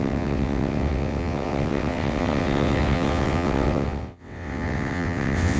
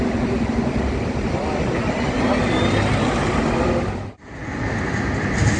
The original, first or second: second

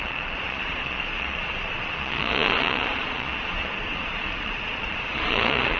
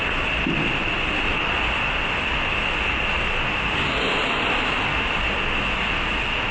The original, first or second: second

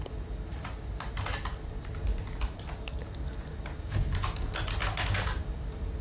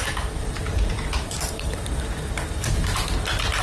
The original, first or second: first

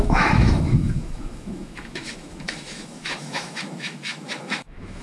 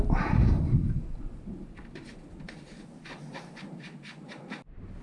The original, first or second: second